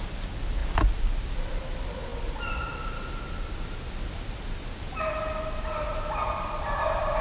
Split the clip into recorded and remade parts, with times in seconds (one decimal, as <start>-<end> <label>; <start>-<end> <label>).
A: 0.0-7.2 recorded